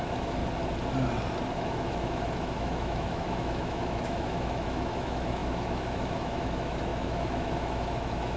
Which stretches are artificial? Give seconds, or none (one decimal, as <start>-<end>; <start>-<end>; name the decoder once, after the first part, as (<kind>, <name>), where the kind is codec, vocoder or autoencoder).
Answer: 0.0-0.4 (autoencoder, DAC-VAE); 1.5-8.4